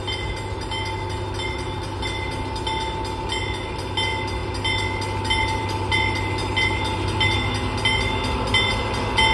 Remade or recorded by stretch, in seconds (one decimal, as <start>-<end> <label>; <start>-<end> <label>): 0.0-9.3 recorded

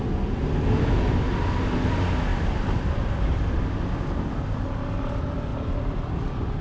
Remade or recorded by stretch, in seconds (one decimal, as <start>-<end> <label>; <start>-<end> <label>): 0.0-2.3 recorded; 2.3-3.8 remade; 3.8-5.5 recorded; 5.5-6.6 remade

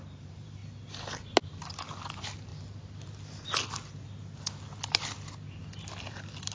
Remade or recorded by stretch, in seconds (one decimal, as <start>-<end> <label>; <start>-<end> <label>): 0.0-0.6 remade; 0.6-1.6 recorded; 1.6-2.5 remade; 2.5-6.5 recorded

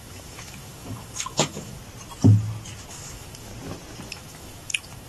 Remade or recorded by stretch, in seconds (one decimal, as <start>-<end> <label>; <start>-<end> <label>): 0.0-1.8 remade; 1.8-2.9 recorded; 2.9-3.5 remade; 3.5-4.1 recorded; 4.1-5.1 remade

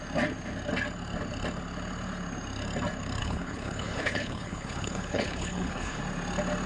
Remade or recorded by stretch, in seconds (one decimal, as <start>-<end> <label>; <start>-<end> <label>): 0.0-3.2 recorded; 3.2-6.0 remade; 6.0-6.7 recorded